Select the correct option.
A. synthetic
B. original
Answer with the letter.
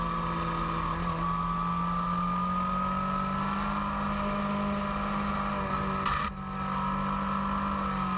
B